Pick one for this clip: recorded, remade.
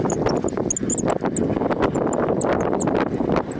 recorded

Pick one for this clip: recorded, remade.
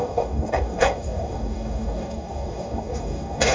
remade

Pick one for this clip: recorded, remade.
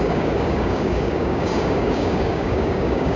remade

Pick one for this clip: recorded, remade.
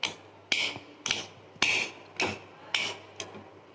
recorded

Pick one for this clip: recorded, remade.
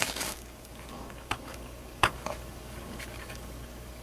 remade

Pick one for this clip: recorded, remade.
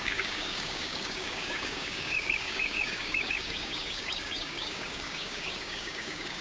remade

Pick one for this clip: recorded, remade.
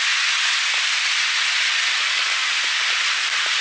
recorded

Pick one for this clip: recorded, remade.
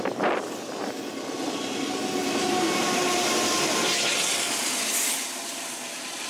recorded